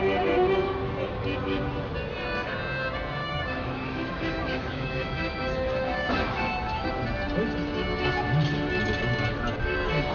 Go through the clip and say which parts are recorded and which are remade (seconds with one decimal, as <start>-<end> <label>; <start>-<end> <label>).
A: 0.0-3.2 recorded; 3.2-6.9 remade; 6.9-10.1 recorded